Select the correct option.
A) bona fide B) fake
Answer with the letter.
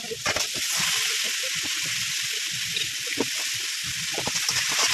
A